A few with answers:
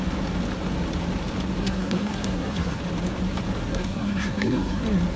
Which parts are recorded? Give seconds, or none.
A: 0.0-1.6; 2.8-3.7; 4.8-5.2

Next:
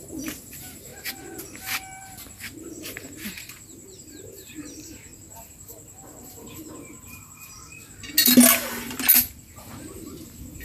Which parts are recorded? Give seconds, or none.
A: 0.9-2.6; 7.6-9.5

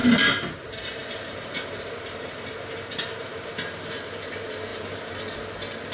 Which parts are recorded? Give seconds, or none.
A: 3.5-4.7; 5.2-5.9

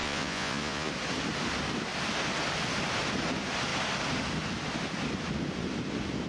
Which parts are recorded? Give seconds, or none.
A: 0.9-6.3

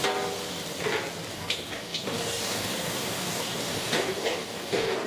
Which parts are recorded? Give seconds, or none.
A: 0.0-1.3

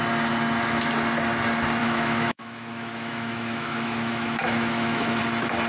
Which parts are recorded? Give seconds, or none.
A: 0.0-1.8; 5.2-5.7

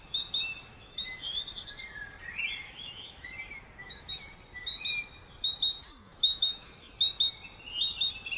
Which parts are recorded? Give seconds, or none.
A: 0.0-0.7; 1.4-2.6; 3.2-3.8; 4.3-5.8; 6.9-8.4